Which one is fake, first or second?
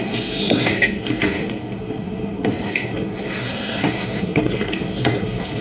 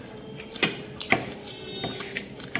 first